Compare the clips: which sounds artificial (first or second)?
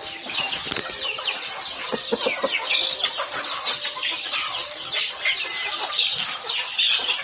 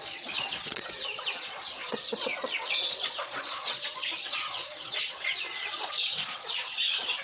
second